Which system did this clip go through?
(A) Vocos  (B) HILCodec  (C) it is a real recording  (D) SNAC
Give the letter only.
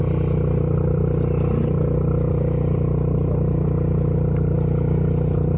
C